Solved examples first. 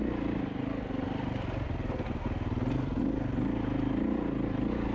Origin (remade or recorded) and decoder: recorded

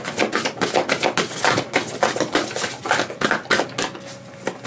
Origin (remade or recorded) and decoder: recorded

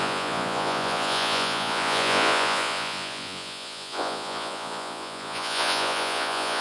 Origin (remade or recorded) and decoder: remade, vocoder, Vocos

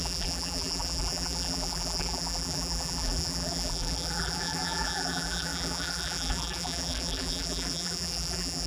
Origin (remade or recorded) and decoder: remade, vocoder, BigVGAN v2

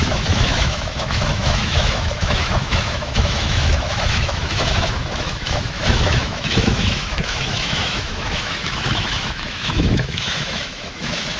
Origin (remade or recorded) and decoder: remade, autoencoder, DAC-VAE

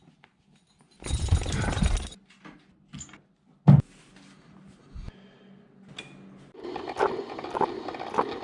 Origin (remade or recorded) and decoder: recorded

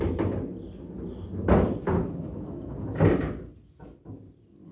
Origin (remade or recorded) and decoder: recorded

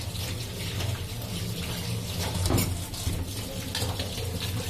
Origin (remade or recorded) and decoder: recorded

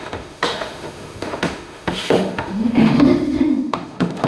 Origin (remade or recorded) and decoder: remade, autoencoder, DAC-VAE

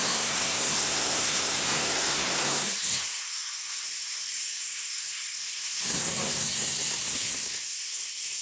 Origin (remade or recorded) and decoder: remade, codec, SNAC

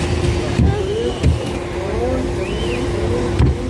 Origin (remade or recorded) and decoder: recorded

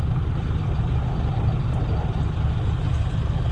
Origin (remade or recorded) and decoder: recorded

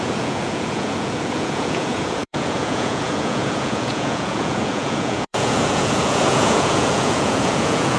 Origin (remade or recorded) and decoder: remade, vocoder, Vocos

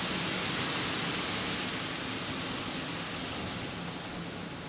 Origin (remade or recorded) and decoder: recorded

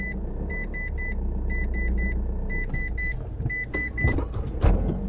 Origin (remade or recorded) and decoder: recorded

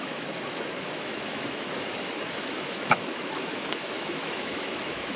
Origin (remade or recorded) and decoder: remade, autoencoder, DAC-VAE